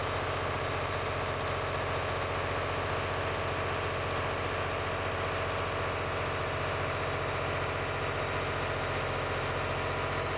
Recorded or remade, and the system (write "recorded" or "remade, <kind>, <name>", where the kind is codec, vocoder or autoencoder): recorded